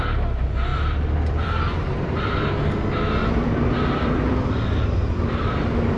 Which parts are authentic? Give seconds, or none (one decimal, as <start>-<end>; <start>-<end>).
0.0-0.7; 2.6-3.2